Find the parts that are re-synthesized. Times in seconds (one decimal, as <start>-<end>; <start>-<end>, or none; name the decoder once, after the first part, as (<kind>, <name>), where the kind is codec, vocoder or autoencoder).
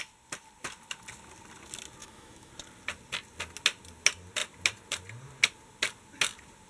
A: 2.0-2.5 (autoencoder, DAC-VAE)